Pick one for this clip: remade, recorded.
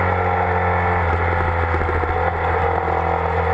recorded